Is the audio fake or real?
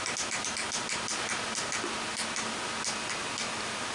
real